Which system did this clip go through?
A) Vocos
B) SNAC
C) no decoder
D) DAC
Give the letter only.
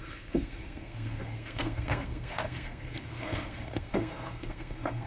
B